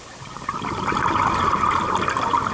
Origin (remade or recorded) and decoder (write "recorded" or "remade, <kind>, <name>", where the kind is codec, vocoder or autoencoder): recorded